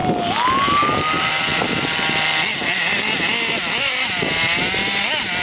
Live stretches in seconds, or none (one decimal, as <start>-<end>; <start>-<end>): 0.0-5.4